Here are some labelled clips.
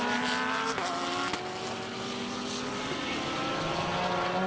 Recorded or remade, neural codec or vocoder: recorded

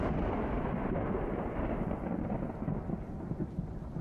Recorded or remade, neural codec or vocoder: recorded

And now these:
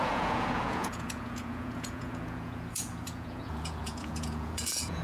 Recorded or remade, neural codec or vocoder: remade, vocoder, Vocos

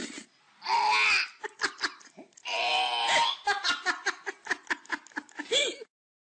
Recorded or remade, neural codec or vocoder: recorded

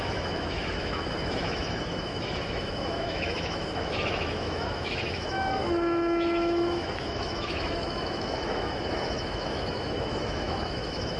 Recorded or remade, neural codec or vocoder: remade, autoencoder, DAC-VAE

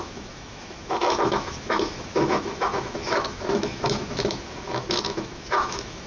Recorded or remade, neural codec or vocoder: remade, autoencoder, DAC-VAE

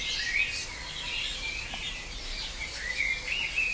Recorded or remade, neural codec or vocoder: recorded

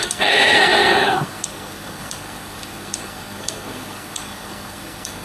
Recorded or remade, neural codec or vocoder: remade, codec, SNAC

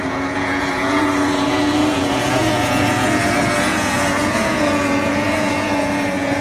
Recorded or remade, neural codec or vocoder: remade, vocoder, Vocos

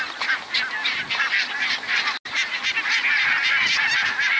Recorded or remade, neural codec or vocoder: recorded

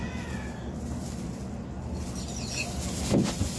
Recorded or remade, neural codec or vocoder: recorded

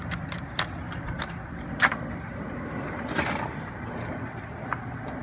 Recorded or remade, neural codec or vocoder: recorded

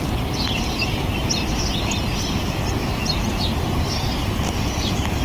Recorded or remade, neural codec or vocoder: recorded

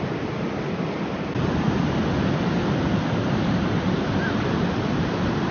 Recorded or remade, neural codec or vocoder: recorded